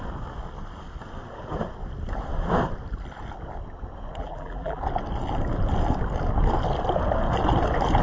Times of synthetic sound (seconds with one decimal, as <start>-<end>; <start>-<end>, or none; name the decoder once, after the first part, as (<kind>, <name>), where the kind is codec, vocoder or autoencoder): 4.2-4.8 (vocoder, BigVGAN v2)